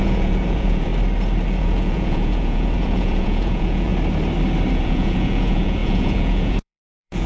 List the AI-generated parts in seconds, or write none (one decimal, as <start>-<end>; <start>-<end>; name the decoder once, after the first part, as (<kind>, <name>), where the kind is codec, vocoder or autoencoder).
0.0-0.9 (vocoder, Vocos); 1.6-3.9; 4.7-7.3